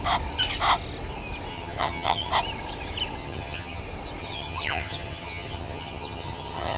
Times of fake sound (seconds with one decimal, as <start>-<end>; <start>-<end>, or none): 1.5-2.3; 3.2-3.8; 4.2-6.8